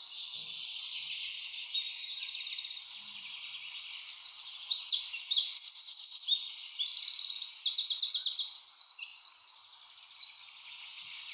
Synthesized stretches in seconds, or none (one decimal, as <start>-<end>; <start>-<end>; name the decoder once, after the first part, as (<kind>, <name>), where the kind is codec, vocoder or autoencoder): none